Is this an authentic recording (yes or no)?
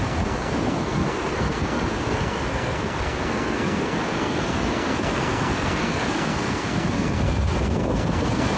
no